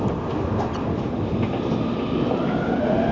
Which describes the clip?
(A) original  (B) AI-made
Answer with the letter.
A